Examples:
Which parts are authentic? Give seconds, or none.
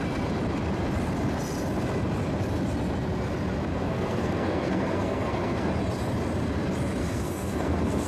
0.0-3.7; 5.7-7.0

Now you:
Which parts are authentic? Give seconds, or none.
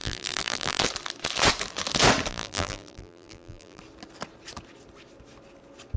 0.8-2.3; 3.8-6.0